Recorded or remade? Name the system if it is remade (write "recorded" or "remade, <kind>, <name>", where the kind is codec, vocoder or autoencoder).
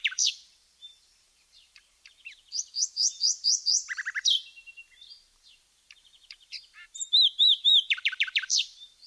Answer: remade, vocoder, BigVGAN v2